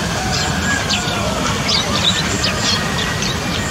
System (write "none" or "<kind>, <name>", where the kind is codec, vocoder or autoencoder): none